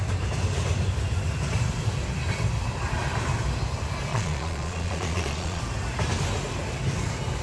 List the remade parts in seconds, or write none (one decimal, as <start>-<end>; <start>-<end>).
4.1-5.6